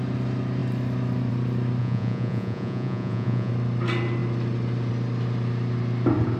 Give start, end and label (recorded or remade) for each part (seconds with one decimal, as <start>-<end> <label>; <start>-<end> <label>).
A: 0.0-1.8 recorded; 1.8-3.5 remade; 3.5-6.4 recorded